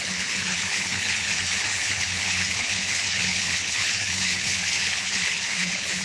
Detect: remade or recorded remade